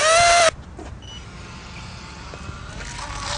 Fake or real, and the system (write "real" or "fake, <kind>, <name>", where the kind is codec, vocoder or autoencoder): real